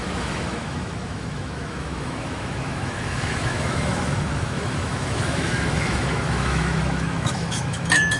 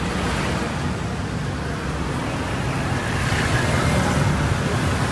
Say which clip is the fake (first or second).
first